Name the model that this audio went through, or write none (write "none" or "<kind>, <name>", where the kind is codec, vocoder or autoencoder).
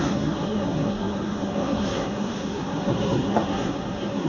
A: codec, SNAC